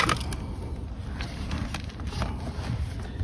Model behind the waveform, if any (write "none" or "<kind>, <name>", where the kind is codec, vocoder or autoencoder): none